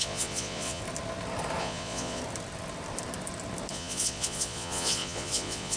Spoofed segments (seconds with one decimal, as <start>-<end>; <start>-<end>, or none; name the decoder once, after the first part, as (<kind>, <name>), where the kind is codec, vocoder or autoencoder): 0.0-0.8 (vocoder, Vocos); 1.6-2.2; 3.7-5.8